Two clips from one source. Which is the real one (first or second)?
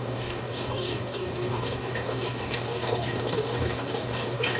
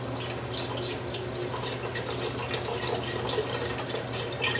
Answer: second